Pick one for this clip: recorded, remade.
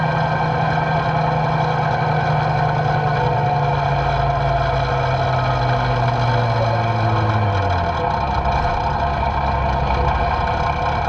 recorded